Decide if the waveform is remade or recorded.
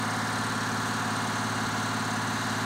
recorded